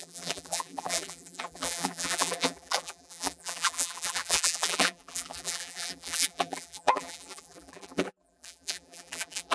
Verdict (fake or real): fake